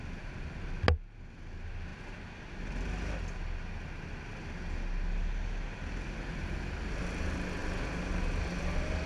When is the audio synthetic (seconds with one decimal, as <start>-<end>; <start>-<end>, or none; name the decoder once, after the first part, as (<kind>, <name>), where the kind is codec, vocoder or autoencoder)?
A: none